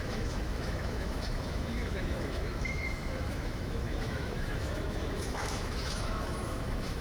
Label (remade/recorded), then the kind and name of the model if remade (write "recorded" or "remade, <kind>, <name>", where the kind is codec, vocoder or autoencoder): remade, autoencoder, DAC-VAE